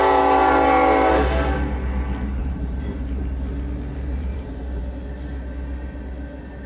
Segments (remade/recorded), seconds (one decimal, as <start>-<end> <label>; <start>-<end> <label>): 0.0-2.4 recorded; 2.4-3.2 remade; 3.2-3.9 recorded; 3.9-4.8 remade; 4.8-6.7 recorded